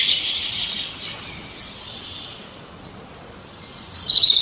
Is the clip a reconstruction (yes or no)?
no